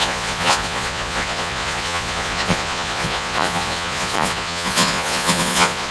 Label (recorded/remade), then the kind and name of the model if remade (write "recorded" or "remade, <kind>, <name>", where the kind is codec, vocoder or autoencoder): remade, vocoder, Vocos